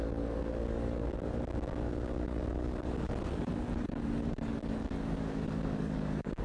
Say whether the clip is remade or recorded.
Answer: remade